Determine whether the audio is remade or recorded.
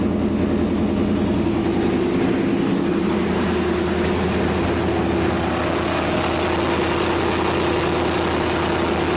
recorded